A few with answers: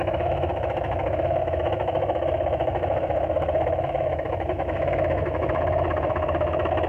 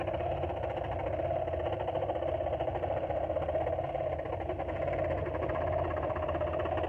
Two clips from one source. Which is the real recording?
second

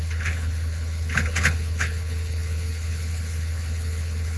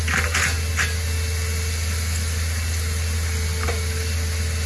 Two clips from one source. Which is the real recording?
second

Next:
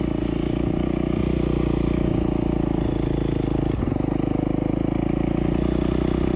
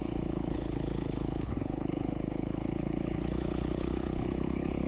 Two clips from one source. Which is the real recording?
first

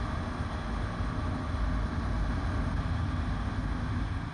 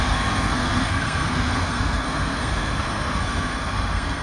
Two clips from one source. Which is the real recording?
first